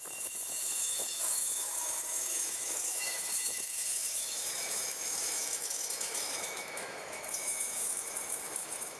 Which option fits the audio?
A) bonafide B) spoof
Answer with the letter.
B